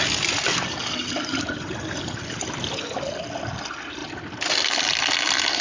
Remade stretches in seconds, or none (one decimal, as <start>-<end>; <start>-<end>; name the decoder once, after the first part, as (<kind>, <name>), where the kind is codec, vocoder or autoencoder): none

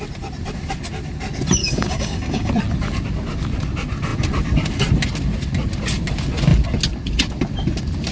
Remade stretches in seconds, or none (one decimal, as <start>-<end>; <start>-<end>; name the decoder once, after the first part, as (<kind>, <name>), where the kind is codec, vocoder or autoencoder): 1.6-2.5 (codec, DAC)

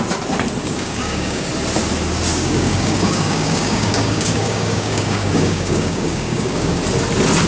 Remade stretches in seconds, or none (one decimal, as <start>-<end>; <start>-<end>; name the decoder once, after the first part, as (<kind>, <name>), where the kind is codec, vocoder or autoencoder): 0.6-1.5 (codec, DAC); 2.3-6.8

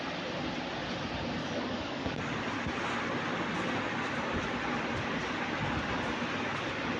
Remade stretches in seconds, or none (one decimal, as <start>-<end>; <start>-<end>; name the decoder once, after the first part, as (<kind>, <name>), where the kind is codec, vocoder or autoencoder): 1.4-2.1 (codec, DAC)